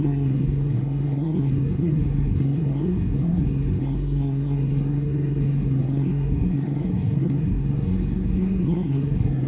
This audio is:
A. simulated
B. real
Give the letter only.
A